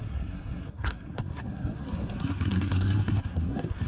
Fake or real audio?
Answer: fake